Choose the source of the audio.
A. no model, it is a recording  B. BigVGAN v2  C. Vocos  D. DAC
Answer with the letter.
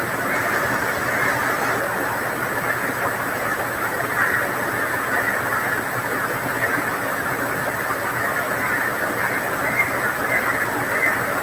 A